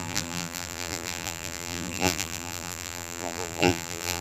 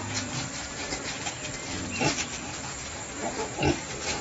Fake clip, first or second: first